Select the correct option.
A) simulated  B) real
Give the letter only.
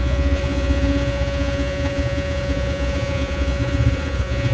A